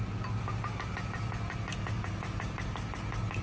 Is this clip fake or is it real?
real